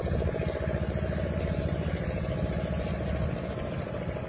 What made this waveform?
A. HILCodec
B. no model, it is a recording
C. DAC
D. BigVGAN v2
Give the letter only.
B